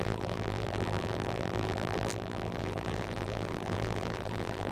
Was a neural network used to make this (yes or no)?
yes